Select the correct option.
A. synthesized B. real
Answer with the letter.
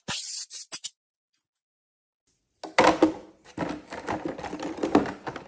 B